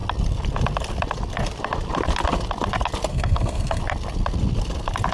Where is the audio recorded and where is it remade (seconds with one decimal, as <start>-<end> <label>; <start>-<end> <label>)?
0.0-3.1 recorded; 3.1-3.8 remade; 3.8-5.1 recorded